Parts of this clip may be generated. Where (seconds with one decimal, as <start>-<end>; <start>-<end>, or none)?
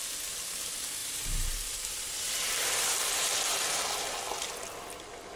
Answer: 1.0-3.8